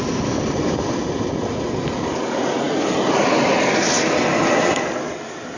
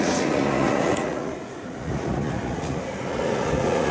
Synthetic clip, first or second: second